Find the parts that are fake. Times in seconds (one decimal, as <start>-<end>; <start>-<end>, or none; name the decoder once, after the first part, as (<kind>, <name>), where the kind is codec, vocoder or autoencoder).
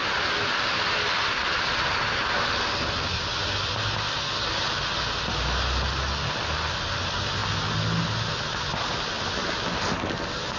none